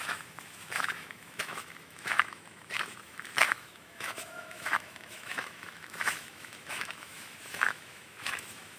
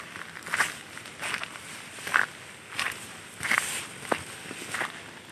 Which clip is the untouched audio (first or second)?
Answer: second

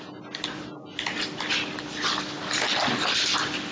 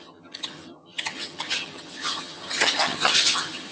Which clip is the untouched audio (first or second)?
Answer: first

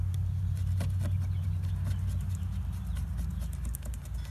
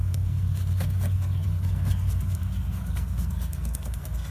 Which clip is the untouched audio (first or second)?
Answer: first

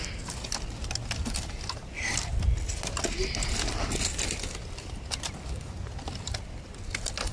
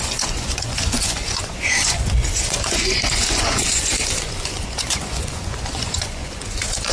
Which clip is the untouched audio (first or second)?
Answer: first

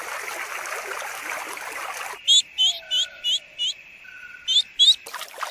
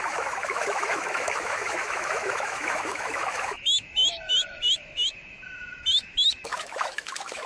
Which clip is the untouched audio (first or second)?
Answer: first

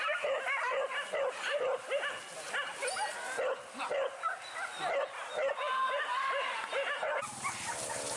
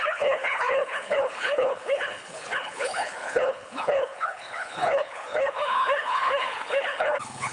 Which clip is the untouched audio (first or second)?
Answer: first